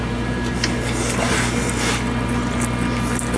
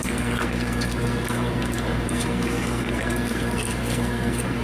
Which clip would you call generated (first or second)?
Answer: second